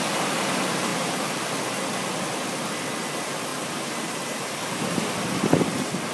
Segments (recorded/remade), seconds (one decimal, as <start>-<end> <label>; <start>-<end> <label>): 0.0-0.9 recorded; 0.9-1.4 remade; 1.4-3.5 recorded; 3.5-5.1 remade; 5.1-6.1 recorded